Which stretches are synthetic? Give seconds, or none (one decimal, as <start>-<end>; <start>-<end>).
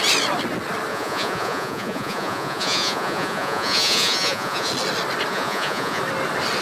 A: 0.9-4.7; 5.3-6.0